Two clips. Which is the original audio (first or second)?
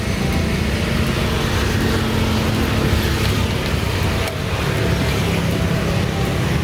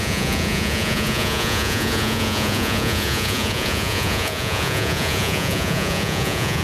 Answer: first